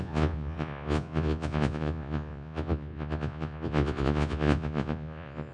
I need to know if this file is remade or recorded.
remade